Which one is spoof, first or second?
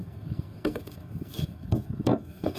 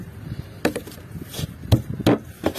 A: first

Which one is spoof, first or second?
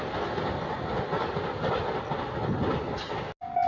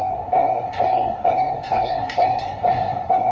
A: second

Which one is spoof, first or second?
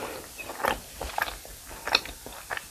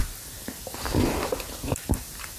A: second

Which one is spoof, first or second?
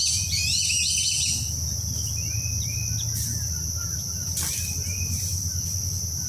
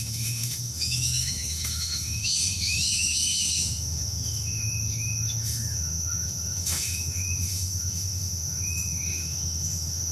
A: second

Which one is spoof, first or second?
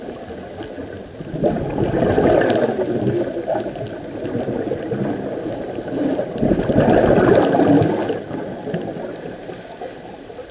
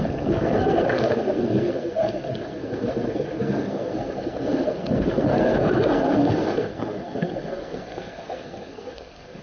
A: second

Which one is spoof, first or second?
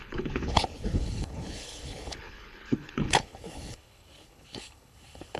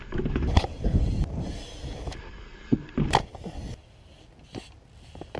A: first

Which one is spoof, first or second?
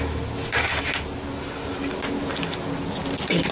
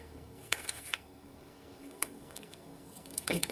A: second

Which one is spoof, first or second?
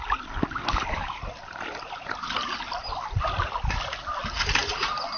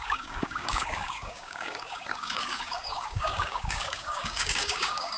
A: second